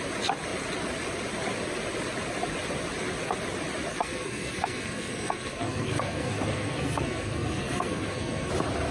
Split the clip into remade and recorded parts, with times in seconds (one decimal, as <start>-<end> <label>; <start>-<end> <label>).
0.0-3.9 recorded; 3.9-8.5 remade; 8.5-8.9 recorded